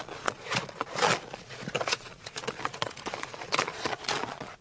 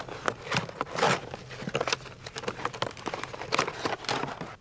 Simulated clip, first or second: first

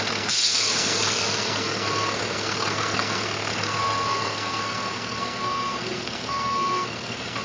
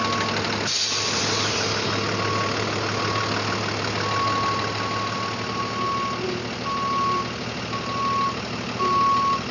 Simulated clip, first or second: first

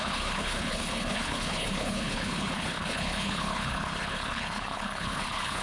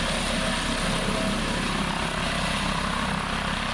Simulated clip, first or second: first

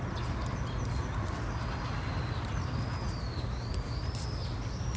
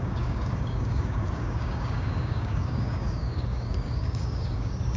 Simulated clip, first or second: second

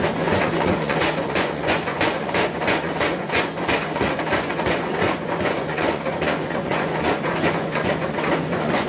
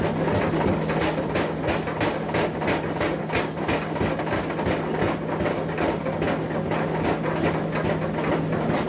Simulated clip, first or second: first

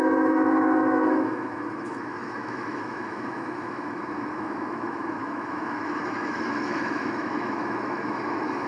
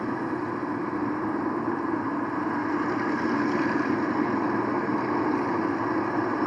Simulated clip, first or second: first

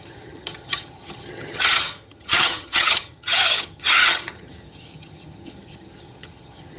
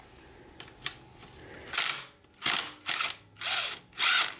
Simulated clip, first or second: first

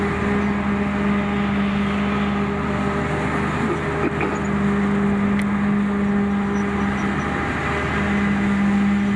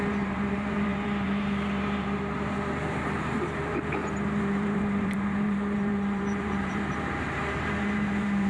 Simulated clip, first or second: second